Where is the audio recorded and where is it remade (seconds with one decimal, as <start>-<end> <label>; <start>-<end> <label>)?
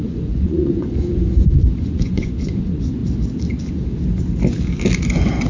0.0-3.0 remade; 3.0-5.5 recorded